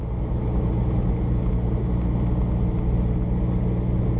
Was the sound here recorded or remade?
recorded